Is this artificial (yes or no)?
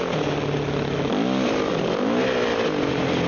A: no